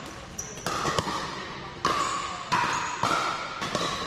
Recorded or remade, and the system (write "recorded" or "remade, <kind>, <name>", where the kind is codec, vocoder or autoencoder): recorded